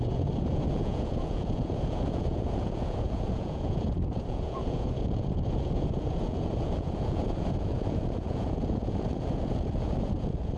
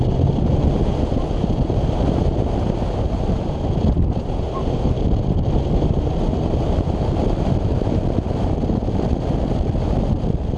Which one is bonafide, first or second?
second